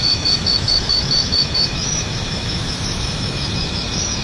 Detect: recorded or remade remade